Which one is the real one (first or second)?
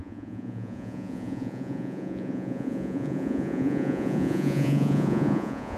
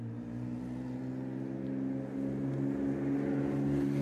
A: second